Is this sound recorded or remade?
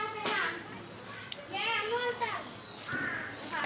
recorded